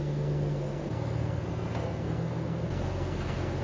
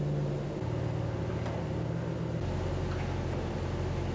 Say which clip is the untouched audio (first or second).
second